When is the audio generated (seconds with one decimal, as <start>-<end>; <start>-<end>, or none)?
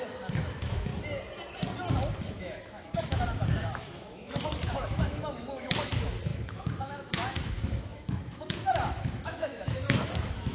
0.0-0.9; 2.3-10.5